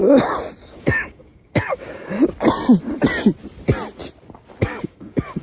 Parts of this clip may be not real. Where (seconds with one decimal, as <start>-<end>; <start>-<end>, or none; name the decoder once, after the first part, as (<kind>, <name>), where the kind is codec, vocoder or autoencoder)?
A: 0.6-2.2 (codec, DAC); 4.6-5.4